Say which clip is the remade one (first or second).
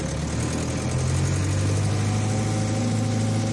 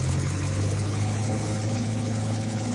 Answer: second